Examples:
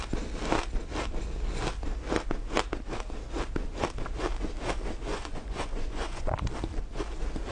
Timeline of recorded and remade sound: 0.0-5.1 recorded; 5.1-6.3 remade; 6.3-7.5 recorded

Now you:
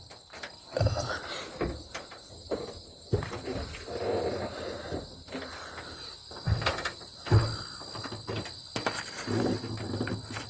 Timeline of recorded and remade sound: 0.0-10.5 recorded